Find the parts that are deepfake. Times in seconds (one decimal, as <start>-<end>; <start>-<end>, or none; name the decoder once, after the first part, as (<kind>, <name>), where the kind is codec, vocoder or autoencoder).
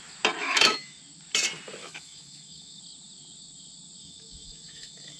0.4-1.0 (autoencoder, DAC-VAE); 1.8-2.8; 4.0-5.2